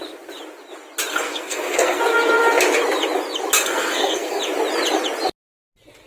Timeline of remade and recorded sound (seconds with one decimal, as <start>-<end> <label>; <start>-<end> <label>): 0.0-1.1 recorded; 1.1-2.0 remade; 2.0-3.6 recorded; 3.6-4.4 remade; 4.4-6.1 recorded